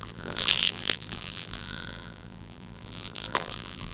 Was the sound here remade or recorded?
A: remade